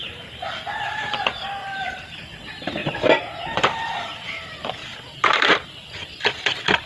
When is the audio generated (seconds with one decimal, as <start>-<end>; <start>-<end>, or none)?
1.6-2.2; 2.8-4.3; 4.8-5.7